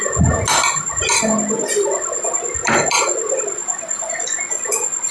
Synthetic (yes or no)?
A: no